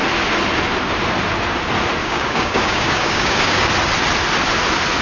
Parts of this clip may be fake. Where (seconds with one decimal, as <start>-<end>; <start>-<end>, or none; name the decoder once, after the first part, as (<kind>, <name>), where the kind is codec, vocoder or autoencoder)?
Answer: 2.0-3.7 (codec, DAC)